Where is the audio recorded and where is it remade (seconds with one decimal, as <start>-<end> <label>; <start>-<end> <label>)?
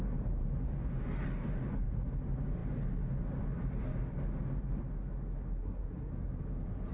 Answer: 0.0-5.6 recorded; 5.6-6.1 remade; 6.1-6.9 recorded